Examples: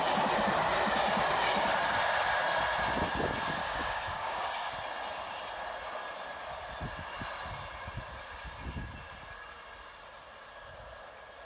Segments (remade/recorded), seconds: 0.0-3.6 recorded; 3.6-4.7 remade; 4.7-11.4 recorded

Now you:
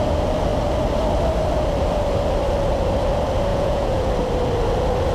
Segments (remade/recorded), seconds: 0.0-3.5 recorded; 3.5-4.1 remade; 4.1-5.1 recorded

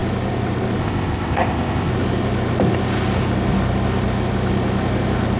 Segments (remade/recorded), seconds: 0.0-0.8 recorded; 0.8-1.9 remade; 1.9-5.4 recorded

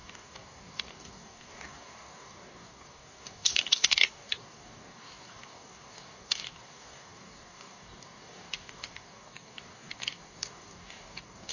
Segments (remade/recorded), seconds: 0.0-11.5 remade

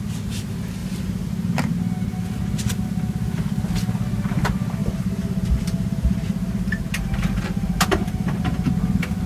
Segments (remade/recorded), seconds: 0.0-0.8 recorded; 0.8-1.7 remade; 1.7-4.8 recorded; 4.8-8.7 remade; 8.7-9.3 recorded

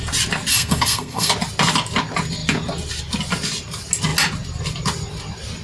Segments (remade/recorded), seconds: 0.0-0.5 recorded; 0.5-1.3 remade; 1.3-5.6 recorded

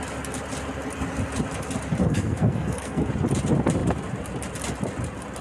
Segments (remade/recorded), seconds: 0.0-2.0 recorded; 2.0-3.1 remade; 3.1-5.4 recorded